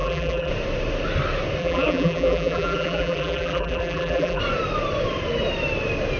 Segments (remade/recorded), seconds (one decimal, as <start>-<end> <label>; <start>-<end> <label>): 0.0-0.5 remade; 0.5-1.6 recorded; 1.6-4.4 remade; 4.4-6.2 recorded